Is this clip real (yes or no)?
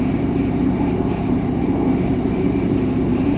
no